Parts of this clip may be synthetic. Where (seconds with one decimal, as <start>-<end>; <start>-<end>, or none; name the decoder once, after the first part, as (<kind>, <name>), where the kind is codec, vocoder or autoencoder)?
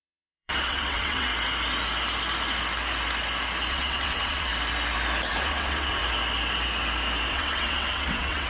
0.0-1.3 (vocoder, WaveNeXt); 3.7-4.5; 5.3-6.0; 7.3-8.5